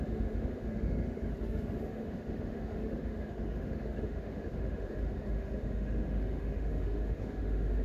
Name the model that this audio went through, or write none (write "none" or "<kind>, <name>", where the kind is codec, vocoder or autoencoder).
autoencoder, DAC-VAE